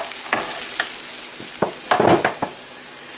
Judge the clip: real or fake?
real